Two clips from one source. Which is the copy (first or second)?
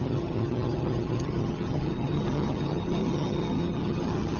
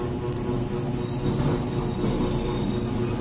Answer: first